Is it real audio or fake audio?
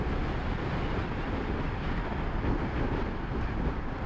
real